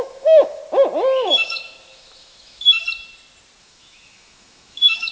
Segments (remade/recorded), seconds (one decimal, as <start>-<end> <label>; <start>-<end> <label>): 0.0-0.6 remade; 0.6-1.3 recorded; 1.3-2.8 remade; 2.8-3.6 recorded; 3.6-5.1 remade

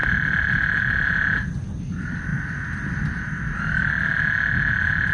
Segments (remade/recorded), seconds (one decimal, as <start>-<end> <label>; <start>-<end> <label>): 0.0-5.1 recorded

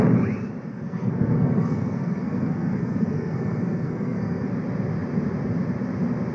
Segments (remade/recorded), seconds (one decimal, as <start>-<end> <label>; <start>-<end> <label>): 0.0-0.7 recorded; 0.7-4.5 remade; 4.5-6.3 recorded

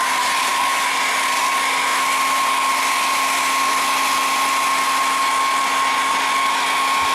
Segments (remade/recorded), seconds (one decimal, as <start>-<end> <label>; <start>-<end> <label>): 0.0-7.1 recorded